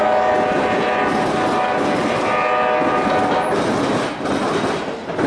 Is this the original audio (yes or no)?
yes